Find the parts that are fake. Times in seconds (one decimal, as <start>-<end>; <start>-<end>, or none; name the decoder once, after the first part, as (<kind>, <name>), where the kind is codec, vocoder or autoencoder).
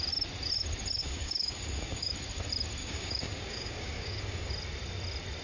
1.0-2.1 (codec, DAC); 2.8-4.5